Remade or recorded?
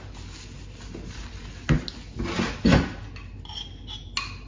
recorded